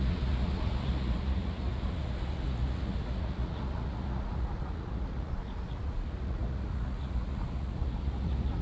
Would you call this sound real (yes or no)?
no